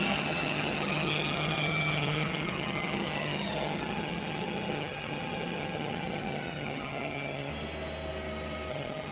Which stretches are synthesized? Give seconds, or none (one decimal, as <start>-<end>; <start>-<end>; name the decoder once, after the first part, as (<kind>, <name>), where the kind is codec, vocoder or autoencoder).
0.0-7.5 (vocoder, HiFi-GAN); 8.7-9.1